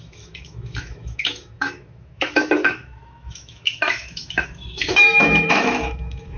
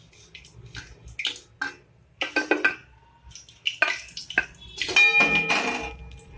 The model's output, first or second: first